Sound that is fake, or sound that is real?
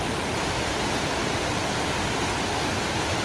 real